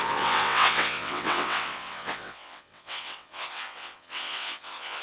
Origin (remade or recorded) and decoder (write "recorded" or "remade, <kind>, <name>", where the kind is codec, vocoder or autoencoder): remade, vocoder, WaveNeXt